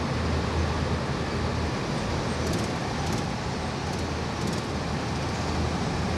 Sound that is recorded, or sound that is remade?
recorded